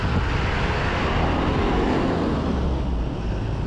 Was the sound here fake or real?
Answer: real